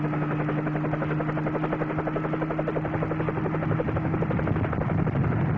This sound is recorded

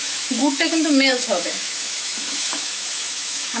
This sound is remade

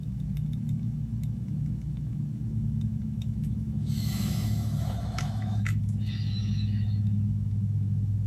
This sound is remade